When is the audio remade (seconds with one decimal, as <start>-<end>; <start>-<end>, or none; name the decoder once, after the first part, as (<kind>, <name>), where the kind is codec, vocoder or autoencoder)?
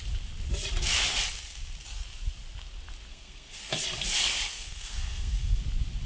3.1-3.6 (codec, SNAC); 4.5-5.6